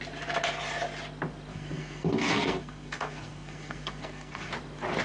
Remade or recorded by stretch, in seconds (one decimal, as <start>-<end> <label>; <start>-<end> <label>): 0.0-1.5 recorded; 1.5-4.5 remade; 4.5-5.0 recorded